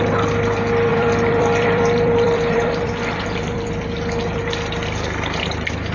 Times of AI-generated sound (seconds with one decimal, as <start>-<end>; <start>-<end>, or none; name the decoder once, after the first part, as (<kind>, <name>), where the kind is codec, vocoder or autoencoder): 0.9-4.4 (vocoder, BigVGAN v2)